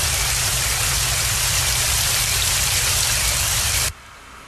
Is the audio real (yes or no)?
no